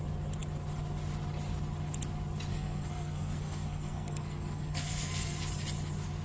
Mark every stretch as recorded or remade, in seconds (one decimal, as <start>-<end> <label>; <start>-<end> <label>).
0.0-2.5 recorded; 2.5-5.4 remade; 5.4-6.2 recorded